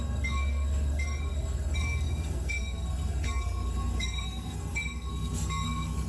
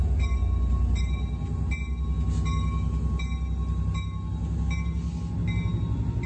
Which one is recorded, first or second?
second